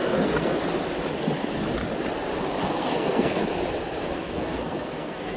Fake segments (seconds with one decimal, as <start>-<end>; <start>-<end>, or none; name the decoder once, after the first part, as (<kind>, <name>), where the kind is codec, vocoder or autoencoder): 0.0-0.6 (codec, SNAC); 2.6-3.4; 4.0-5.4